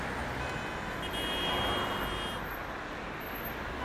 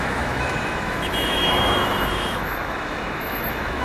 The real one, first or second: first